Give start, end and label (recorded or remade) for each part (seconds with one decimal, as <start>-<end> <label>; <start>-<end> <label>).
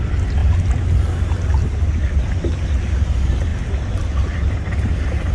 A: 0.0-5.3 recorded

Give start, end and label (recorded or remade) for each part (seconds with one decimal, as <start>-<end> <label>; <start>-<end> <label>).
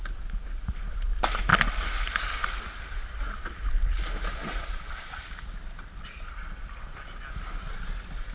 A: 0.0-8.3 recorded